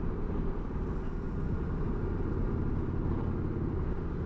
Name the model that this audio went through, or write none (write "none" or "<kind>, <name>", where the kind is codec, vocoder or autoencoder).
none